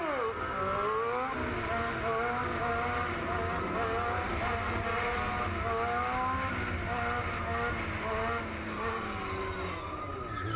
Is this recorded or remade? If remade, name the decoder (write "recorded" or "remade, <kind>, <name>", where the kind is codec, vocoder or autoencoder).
recorded